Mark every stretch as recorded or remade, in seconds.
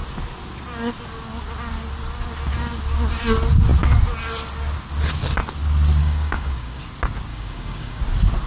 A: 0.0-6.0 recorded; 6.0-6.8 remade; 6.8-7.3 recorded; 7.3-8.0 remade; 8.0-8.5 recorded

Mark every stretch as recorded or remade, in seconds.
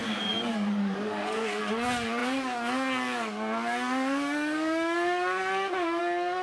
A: 0.0-6.4 remade